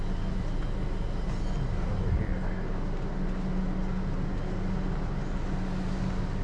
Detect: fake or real real